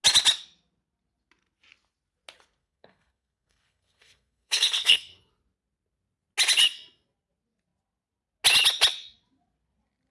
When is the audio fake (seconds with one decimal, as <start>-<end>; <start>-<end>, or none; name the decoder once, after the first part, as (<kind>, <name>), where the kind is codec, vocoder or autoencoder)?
2.6-5.3 (codec, SNAC)